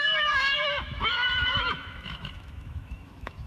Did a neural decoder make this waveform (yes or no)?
yes